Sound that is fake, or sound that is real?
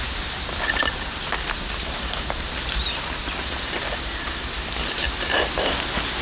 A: real